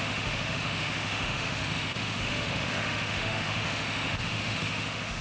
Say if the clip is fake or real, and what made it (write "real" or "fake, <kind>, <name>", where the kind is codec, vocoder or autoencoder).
fake, autoencoder, DAC-VAE